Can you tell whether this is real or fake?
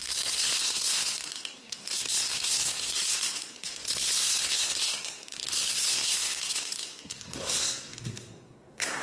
fake